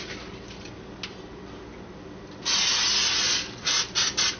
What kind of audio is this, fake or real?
real